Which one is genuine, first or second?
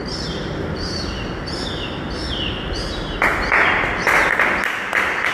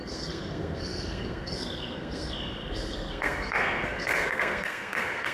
first